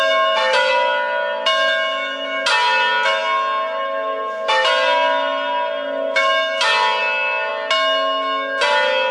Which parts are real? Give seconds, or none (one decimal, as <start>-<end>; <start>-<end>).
0.0-9.1